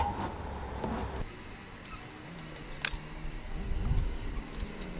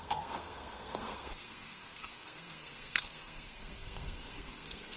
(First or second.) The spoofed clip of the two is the second